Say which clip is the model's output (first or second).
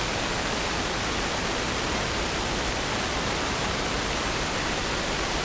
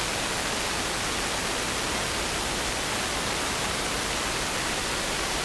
first